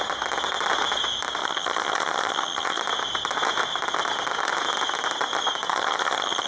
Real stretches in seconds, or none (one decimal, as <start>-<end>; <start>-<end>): 0.0-1.4; 2.8-5.7